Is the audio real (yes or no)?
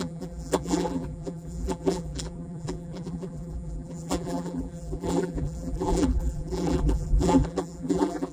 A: no